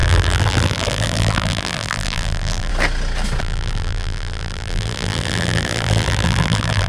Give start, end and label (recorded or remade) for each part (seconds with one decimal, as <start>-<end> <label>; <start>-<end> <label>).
0.0-2.7 remade; 2.7-3.4 recorded; 3.4-6.9 remade